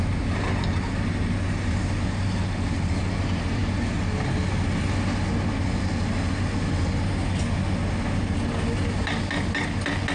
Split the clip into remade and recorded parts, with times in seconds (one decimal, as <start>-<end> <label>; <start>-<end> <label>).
0.0-10.1 recorded